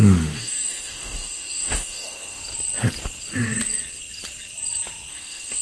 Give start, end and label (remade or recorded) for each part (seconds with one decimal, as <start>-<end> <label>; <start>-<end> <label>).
0.0-2.4 remade; 2.4-5.1 recorded; 5.1-5.6 remade